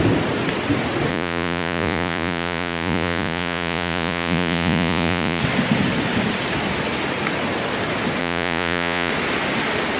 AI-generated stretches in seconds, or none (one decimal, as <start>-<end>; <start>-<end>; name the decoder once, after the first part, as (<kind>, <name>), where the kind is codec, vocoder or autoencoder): 1.1-5.4 (vocoder, Vocos); 8.2-9.1